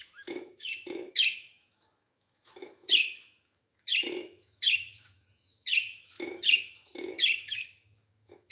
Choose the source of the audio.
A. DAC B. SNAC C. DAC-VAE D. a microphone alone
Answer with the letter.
C